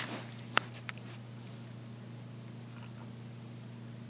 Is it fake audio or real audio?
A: real